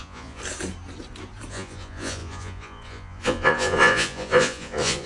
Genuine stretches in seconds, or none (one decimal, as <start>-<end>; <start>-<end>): 0.4-1.5